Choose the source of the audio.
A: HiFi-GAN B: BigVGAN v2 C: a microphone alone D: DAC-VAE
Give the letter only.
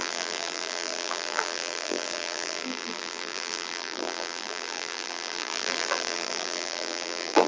B